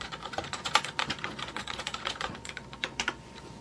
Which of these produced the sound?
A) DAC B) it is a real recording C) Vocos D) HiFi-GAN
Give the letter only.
C